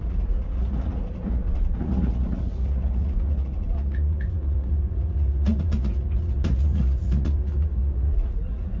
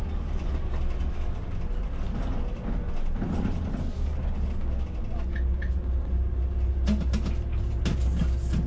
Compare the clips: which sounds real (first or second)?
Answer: second